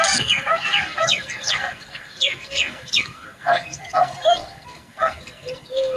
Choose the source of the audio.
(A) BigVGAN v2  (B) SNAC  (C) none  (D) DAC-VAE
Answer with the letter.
B